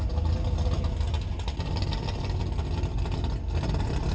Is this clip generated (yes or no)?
no